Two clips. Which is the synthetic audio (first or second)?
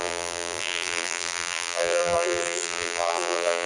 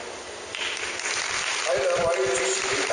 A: first